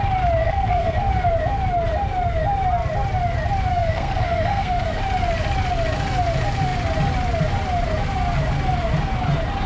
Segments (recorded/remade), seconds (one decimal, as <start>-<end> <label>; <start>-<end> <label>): 0.0-0.4 recorded; 0.4-1.1 remade; 1.1-3.7 recorded; 3.7-5.0 remade; 5.0-9.7 recorded